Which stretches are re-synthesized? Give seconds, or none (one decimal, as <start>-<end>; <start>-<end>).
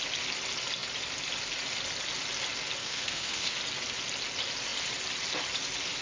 2.8-3.6